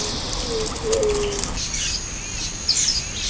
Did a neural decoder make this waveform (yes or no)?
no